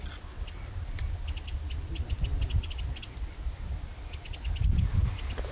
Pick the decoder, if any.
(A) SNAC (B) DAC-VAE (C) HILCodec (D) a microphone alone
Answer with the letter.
D